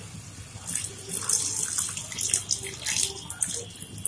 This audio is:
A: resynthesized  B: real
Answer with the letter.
B